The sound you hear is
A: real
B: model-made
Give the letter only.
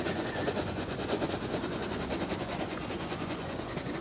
B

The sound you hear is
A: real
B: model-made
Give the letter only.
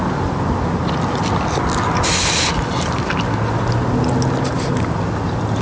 A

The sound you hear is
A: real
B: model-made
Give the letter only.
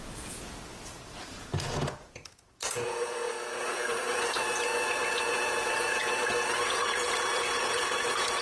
B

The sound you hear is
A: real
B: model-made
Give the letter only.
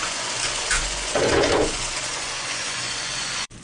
B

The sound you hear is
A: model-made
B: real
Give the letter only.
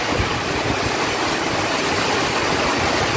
B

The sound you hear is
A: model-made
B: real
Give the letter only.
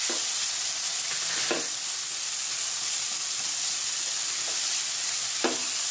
B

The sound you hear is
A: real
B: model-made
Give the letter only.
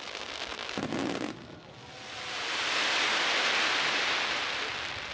A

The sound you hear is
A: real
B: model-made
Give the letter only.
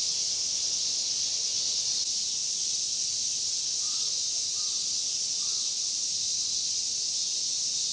B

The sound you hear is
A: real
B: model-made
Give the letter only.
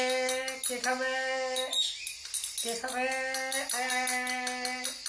A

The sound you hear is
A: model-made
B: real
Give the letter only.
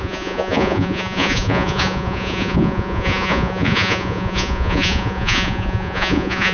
A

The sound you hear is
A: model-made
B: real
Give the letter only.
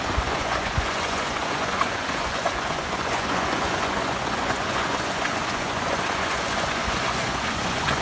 A